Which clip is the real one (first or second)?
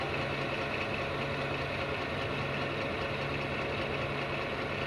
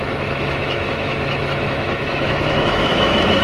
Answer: first